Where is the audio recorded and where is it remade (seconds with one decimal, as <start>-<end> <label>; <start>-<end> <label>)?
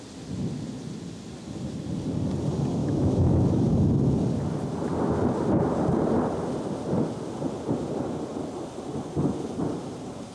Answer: 0.0-2.8 recorded; 2.8-3.7 remade; 3.7-10.3 recorded